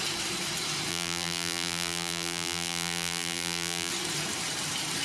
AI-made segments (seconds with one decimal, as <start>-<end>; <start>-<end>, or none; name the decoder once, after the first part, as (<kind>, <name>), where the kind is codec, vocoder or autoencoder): 0.9-3.9 (vocoder, BigVGAN v2)